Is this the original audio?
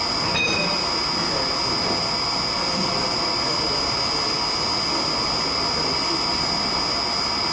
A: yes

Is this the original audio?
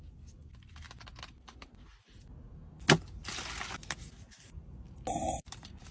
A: yes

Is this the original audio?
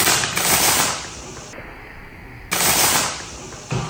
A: yes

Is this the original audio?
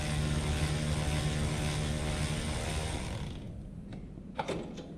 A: yes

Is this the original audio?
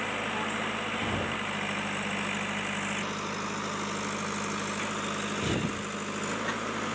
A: yes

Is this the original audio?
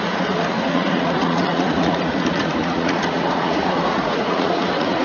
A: no